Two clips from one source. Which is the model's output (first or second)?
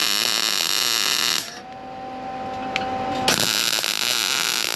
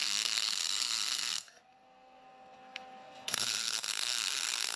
second